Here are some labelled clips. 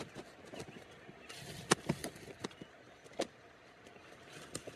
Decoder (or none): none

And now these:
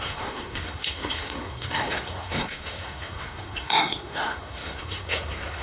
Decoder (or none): codec, SNAC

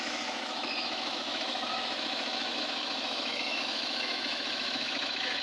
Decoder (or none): autoencoder, DAC-VAE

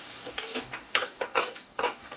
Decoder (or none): codec, DAC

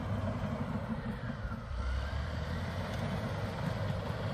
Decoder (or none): vocoder, BigVGAN v2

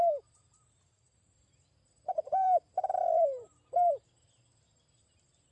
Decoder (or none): vocoder, BigVGAN v2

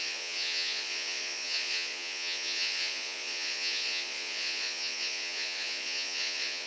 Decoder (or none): vocoder, Vocos